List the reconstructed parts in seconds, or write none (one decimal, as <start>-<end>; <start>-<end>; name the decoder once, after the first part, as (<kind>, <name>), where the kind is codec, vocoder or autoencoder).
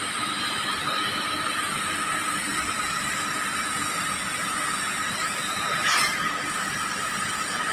5.4-6.2 (vocoder, Vocos)